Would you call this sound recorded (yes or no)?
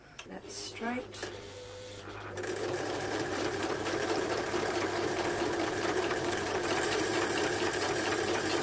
no